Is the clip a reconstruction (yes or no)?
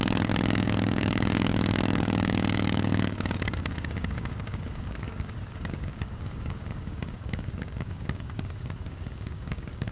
yes